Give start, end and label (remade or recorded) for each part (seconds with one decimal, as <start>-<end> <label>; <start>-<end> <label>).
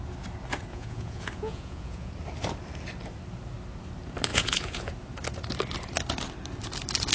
0.0-0.7 recorded; 0.7-2.1 remade; 2.1-4.3 recorded; 4.3-4.9 remade; 4.9-7.1 recorded